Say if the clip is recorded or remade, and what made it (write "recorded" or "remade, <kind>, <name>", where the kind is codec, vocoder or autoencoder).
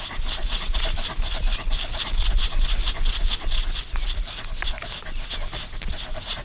recorded